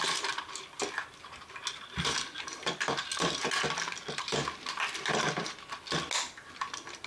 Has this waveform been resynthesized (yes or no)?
no